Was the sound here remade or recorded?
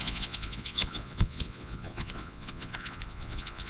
remade